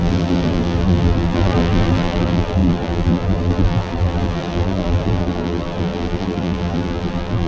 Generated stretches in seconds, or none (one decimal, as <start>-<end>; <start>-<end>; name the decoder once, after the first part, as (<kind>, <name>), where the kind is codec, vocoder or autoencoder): 0.0-7.5 (vocoder, BigVGAN v2)